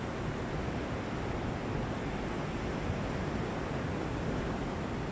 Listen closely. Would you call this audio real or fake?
real